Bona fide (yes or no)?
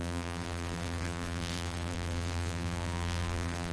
no